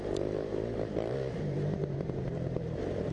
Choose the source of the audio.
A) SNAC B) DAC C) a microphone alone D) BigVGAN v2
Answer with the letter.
D